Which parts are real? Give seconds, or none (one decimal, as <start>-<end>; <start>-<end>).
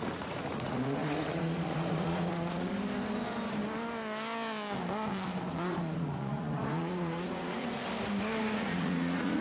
2.7-5.7; 7.8-8.4